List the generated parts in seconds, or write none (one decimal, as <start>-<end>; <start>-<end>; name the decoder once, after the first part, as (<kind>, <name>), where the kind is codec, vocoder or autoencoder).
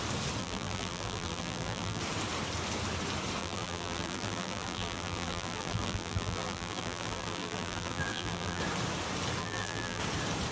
0.4-2.0 (vocoder, BigVGAN v2); 3.4-8.6; 9.4-10.0